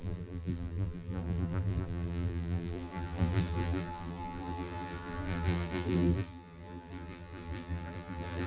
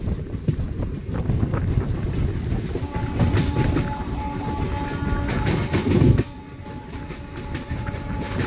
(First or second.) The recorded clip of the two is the second